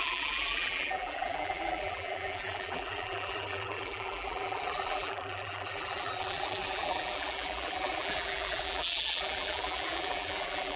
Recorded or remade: remade